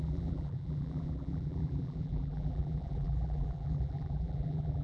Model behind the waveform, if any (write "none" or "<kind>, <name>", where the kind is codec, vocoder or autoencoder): vocoder, BigVGAN v2